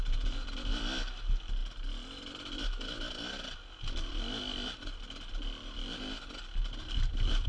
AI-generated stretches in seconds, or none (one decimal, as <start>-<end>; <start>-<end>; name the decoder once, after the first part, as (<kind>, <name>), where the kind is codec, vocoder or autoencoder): none